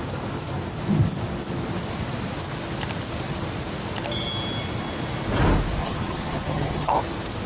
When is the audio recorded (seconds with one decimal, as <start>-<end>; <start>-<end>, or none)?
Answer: 0.0-5.8; 6.9-7.5